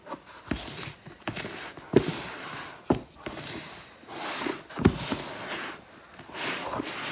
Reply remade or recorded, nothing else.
recorded